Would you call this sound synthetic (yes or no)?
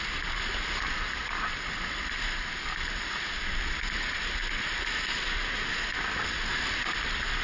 no